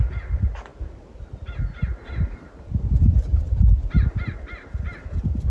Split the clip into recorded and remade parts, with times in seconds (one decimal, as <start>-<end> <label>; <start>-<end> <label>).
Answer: 0.0-5.5 recorded